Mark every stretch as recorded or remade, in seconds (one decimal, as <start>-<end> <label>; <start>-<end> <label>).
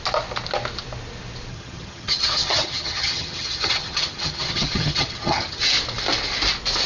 0.0-1.5 recorded; 1.5-5.6 remade; 5.6-6.9 recorded